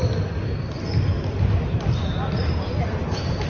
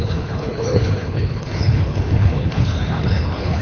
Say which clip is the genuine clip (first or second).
first